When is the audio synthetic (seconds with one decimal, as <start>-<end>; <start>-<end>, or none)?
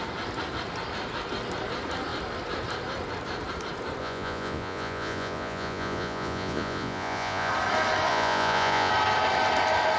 4.0-7.5; 8.1-8.9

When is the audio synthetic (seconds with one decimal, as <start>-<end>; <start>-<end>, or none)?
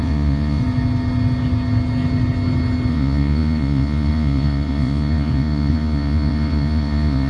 0.0-0.6; 2.9-7.3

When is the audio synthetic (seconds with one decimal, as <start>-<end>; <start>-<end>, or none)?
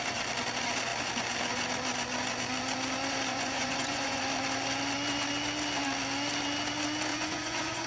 3.3-4.2; 7.1-7.9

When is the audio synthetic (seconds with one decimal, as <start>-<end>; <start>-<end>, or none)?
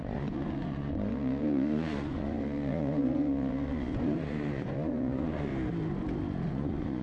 0.0-5.5; 6.5-7.0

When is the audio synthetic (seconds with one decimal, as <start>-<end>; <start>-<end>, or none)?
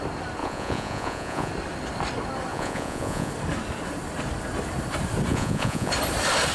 0.4-1.5; 2.5-3.3; 5.3-5.9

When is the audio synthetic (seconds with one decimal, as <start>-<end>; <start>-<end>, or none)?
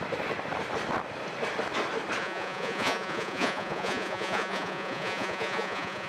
2.2-6.1